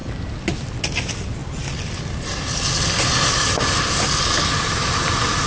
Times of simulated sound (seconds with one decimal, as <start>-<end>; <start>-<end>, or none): none